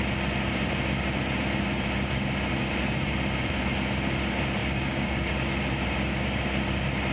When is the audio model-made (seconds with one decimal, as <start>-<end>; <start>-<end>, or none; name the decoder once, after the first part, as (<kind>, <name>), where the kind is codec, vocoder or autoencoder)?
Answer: 4.6-5.3 (codec, DAC)

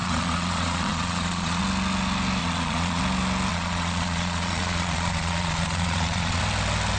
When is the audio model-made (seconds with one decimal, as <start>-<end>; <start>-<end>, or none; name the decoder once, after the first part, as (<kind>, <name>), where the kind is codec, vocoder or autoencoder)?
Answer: 0.0-1.6 (vocoder, Vocos); 2.4-3.0; 3.5-6.4

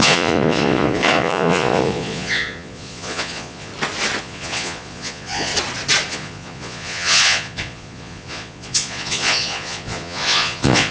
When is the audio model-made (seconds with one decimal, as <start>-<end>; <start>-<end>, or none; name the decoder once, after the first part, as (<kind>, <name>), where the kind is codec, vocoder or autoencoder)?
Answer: 0.0-3.7 (vocoder, Vocos); 4.2-5.5; 6.1-10.9